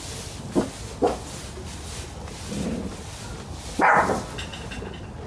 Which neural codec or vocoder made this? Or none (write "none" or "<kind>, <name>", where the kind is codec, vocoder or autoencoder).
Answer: none